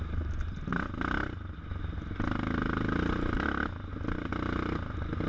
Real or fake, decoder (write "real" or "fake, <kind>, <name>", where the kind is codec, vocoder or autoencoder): real